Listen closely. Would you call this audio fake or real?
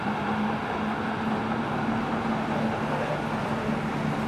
real